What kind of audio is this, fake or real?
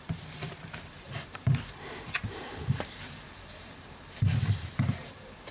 fake